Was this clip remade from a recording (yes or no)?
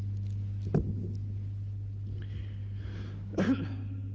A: no